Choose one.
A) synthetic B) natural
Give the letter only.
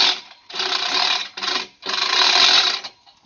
B